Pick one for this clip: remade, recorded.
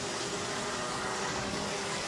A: remade